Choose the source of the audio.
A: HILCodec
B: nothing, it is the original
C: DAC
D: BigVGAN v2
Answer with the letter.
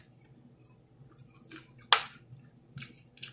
B